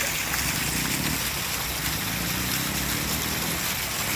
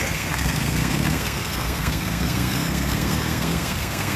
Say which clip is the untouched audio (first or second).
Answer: first